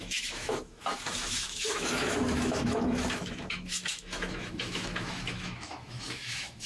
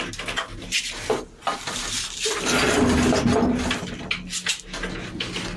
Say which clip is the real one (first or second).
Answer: second